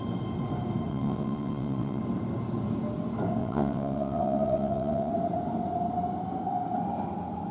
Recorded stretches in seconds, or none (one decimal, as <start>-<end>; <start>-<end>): 0.0-0.9; 2.0-3.4; 5.1-7.5